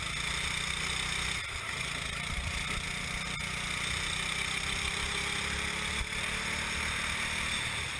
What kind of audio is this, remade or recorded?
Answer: recorded